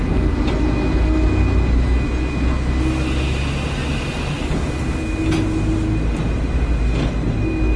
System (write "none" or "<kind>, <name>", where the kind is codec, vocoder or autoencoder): none